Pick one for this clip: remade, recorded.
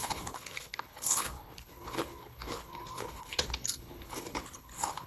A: remade